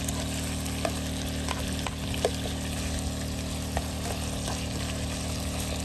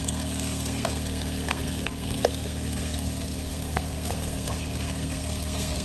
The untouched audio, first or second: first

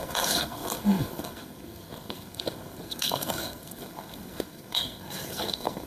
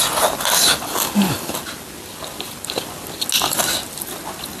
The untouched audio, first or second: second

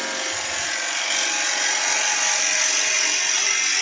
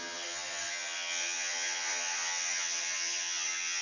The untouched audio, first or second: first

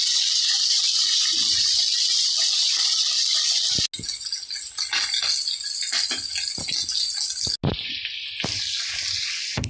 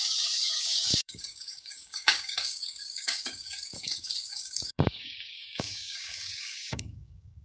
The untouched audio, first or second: first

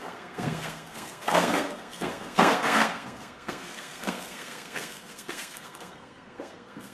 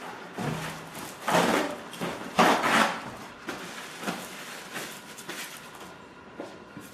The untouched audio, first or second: second